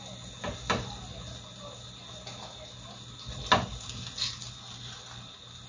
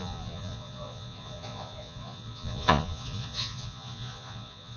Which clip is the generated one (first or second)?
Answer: second